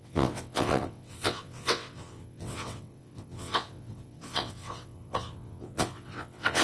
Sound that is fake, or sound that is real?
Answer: fake